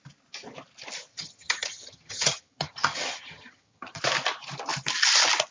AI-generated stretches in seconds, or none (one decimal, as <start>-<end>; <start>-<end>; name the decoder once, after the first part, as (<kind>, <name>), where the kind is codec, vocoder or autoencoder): 1.1-4.0 (vocoder, HiFi-GAN)